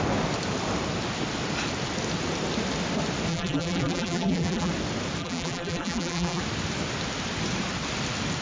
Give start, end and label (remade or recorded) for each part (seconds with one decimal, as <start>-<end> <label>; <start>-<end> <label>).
0.0-3.3 recorded; 3.3-4.7 remade; 4.7-5.2 recorded; 5.2-6.4 remade; 6.4-8.4 recorded